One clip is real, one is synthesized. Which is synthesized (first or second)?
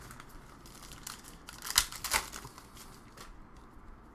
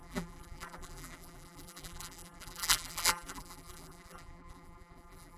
second